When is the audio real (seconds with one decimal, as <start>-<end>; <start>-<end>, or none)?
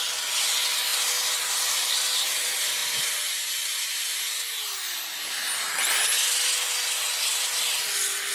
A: 0.0-8.3